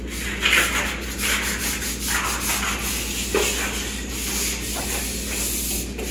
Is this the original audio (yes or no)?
yes